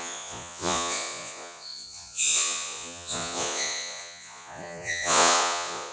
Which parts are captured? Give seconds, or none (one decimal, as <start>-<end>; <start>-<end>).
none